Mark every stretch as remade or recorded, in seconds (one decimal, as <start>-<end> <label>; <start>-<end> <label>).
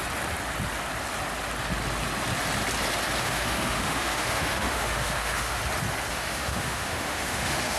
0.0-3.2 recorded; 3.2-5.6 remade; 5.6-6.1 recorded; 6.1-7.8 remade